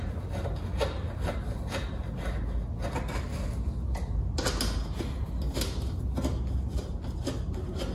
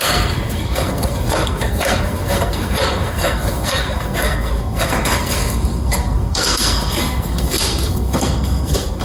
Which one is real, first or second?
first